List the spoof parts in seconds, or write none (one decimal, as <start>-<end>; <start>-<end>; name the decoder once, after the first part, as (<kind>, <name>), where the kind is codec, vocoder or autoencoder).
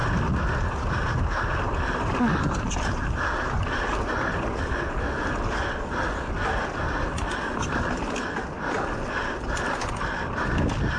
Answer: none